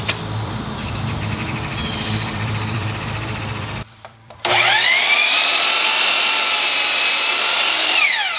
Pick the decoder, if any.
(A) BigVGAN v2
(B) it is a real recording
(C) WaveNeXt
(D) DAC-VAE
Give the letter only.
A